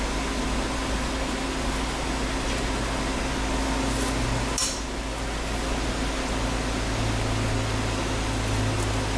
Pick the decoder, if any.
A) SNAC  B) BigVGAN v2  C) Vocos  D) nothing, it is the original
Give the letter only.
D